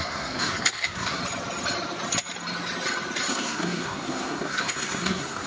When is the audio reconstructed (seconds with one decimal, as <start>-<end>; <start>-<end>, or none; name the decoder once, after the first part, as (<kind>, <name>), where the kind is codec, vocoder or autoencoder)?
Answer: 0.0-1.2 (codec, SNAC); 3.3-5.5